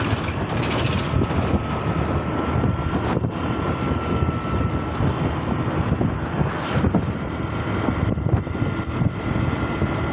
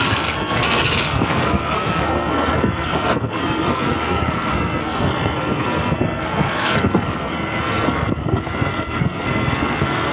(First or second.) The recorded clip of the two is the first